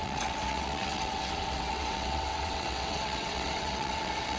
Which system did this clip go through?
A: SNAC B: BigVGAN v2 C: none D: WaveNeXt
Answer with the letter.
D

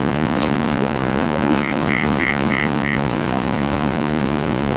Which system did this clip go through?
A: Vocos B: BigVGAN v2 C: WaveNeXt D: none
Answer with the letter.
A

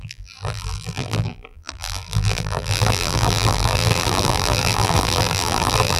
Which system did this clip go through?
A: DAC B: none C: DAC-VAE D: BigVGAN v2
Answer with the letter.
D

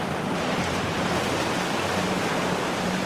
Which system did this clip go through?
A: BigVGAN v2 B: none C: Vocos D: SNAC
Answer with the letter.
A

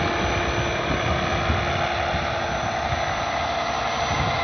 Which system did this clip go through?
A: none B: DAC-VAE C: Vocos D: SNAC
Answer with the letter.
A